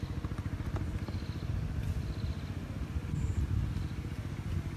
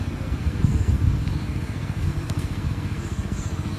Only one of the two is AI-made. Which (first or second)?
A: second